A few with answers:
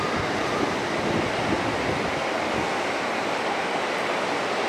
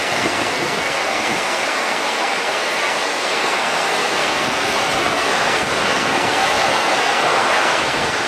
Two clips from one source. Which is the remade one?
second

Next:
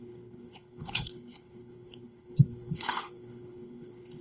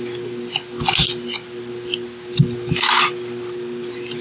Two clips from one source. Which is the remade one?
first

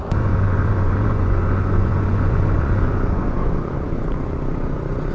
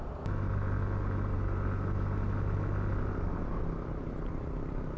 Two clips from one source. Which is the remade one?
first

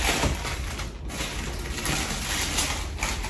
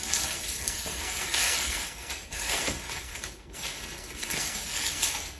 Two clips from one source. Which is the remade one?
second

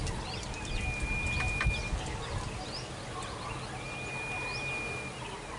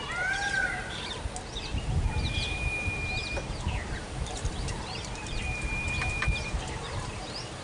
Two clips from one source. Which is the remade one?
second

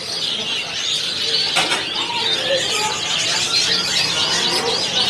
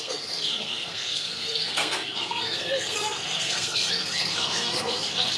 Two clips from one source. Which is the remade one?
second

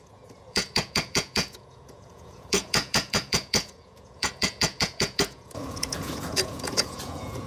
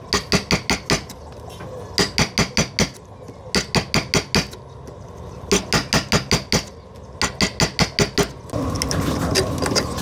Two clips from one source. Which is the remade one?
first